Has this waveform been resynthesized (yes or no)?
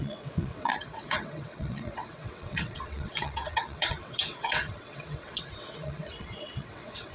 yes